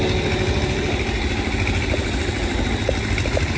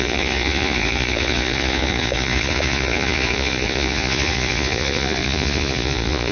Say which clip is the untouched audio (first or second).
first